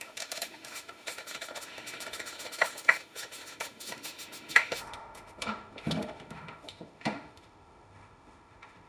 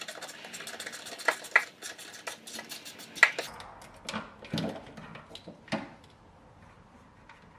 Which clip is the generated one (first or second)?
first